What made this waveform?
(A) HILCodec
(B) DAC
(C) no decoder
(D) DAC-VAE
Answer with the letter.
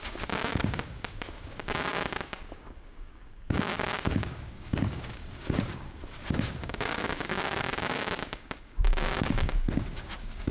B